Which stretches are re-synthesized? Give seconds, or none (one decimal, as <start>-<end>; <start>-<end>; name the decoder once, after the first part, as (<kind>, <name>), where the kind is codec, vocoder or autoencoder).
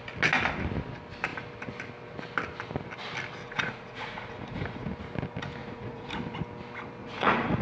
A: 3.4-4.9 (vocoder, Vocos); 5.6-6.1; 7.0-7.6